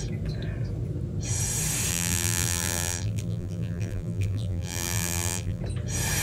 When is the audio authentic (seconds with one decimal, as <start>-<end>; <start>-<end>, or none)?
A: 0.0-1.9; 5.6-6.2